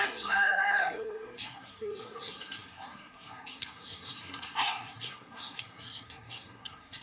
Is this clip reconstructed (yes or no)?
yes